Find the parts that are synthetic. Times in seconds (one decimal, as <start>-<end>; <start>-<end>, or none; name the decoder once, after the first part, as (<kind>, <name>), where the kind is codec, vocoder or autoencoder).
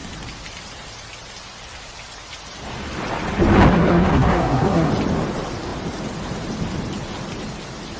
3.7-4.9 (codec, SNAC)